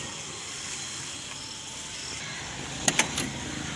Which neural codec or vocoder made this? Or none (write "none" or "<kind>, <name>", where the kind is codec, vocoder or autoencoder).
none